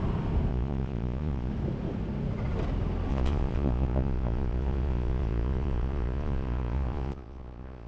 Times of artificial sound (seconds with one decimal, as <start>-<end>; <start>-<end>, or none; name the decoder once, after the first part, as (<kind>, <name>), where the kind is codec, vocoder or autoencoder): 0.5-1.5 (vocoder, Vocos); 3.1-7.9